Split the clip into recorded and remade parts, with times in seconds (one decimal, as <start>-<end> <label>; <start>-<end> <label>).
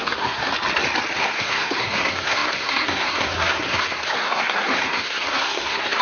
0.0-0.5 remade; 0.5-1.2 recorded; 1.2-6.0 remade